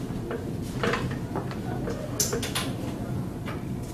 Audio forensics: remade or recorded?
recorded